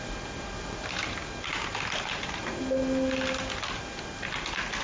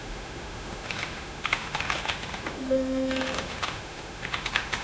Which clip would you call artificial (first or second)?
second